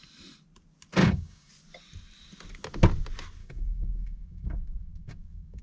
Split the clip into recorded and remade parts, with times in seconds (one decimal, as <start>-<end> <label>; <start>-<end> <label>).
0.0-1.0 recorded; 1.0-1.5 remade; 1.5-3.4 recorded; 3.4-5.6 remade